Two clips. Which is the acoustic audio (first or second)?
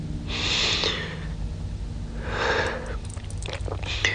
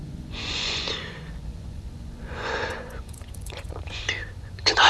first